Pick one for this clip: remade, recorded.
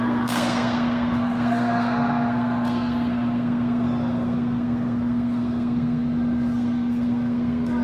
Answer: remade